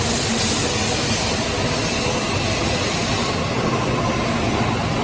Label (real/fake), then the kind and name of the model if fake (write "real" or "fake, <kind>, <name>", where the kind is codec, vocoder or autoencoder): real